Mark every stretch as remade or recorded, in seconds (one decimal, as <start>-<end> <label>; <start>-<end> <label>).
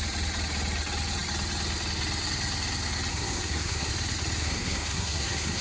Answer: 0.0-3.1 recorded; 3.1-3.9 remade; 3.9-4.4 recorded; 4.4-5.6 remade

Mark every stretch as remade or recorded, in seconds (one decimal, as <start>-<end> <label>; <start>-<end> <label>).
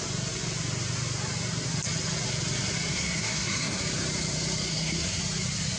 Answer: 0.0-2.9 recorded; 2.9-3.8 remade; 3.8-4.7 recorded; 4.7-5.2 remade; 5.2-5.8 recorded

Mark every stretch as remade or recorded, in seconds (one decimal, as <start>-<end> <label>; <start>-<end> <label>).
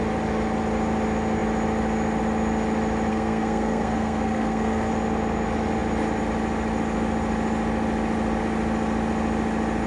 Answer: 0.0-3.1 recorded; 3.1-4.9 remade; 4.9-9.9 recorded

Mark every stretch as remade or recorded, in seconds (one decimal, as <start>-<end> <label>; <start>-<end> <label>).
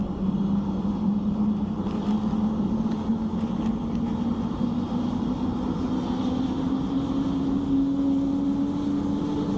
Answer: 0.0-9.6 recorded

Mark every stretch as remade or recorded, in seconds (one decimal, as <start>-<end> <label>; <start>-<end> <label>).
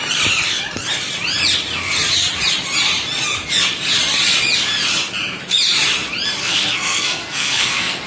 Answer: 0.0-6.4 recorded; 6.4-8.1 remade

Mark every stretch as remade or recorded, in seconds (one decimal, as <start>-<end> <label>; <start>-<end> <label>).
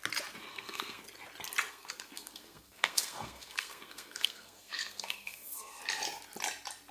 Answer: 0.0-0.5 recorded; 0.5-1.0 remade; 1.0-1.7 recorded; 1.7-5.8 remade; 5.8-6.9 recorded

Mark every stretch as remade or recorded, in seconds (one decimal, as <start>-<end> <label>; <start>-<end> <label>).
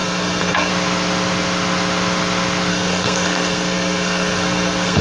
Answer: 0.0-0.7 remade; 0.7-2.7 recorded; 2.7-5.0 remade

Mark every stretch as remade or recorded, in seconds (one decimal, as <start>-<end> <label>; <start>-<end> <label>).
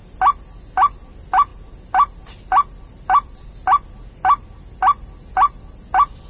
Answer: 0.0-6.3 recorded